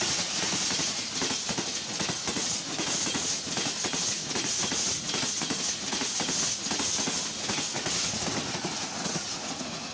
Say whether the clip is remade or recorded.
remade